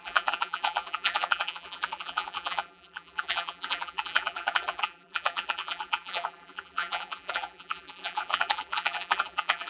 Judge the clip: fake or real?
fake